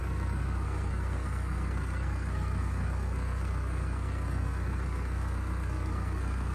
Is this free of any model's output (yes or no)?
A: no